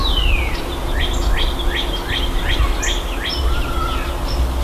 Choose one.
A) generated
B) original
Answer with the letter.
B